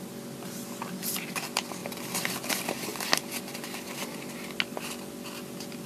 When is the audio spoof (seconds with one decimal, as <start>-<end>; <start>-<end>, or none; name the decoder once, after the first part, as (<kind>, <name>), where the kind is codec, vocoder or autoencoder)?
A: none